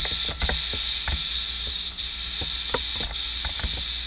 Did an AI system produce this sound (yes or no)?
no